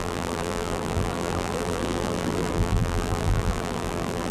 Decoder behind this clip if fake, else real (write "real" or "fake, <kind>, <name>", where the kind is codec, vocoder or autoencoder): fake, vocoder, BigVGAN v2